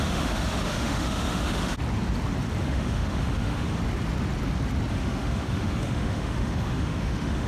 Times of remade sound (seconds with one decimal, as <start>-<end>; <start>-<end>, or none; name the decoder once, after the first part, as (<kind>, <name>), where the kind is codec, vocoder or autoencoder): 0.0-1.7 (autoencoder, DAC-VAE); 2.6-3.8; 4.9-7.5